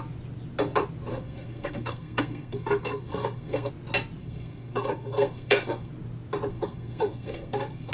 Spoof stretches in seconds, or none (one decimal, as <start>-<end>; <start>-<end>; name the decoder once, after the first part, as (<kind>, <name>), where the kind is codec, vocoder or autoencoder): 1.1-3.7 (codec, SNAC); 4.2-5.9; 6.5-7.9